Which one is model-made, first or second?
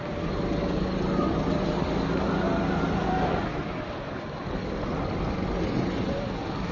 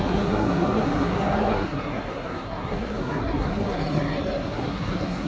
second